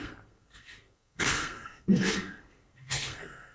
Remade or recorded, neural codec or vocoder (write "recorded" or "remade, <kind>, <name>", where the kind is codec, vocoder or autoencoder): remade, codec, SNAC